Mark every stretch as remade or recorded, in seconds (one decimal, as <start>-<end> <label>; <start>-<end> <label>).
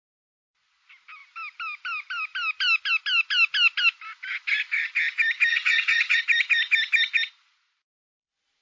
0.0-5.5 recorded; 5.5-6.2 remade; 6.2-8.6 recorded